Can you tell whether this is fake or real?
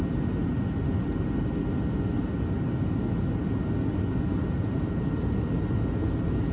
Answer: real